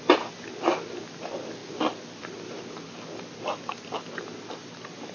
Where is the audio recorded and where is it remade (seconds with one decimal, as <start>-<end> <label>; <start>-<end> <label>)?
0.0-5.1 recorded